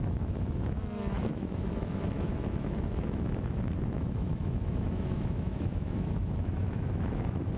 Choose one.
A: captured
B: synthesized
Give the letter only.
B